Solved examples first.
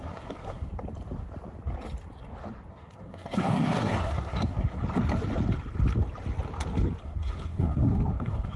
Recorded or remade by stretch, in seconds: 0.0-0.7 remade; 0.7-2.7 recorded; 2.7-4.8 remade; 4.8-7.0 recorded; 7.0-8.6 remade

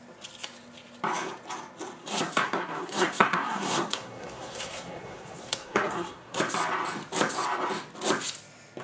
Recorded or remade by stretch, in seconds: 0.0-2.0 recorded; 2.0-6.4 remade; 6.4-8.8 recorded

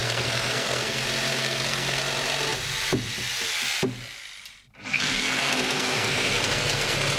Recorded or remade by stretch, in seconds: 0.0-1.0 remade; 1.0-1.4 recorded; 1.4-2.0 remade; 2.0-4.9 recorded; 4.9-7.2 remade

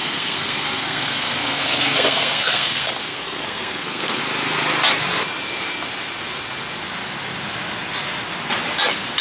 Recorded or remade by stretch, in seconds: 0.0-4.2 remade; 4.2-9.2 recorded

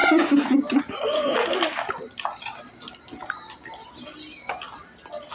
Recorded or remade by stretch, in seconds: 0.0-5.3 recorded